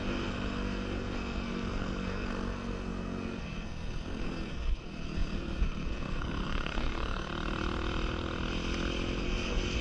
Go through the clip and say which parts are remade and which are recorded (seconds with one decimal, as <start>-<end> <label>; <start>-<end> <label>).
0.0-7.3 remade; 7.3-9.2 recorded; 9.2-9.8 remade